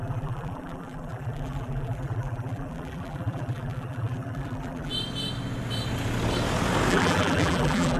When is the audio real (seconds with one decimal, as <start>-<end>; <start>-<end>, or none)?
4.9-6.9